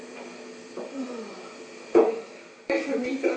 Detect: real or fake fake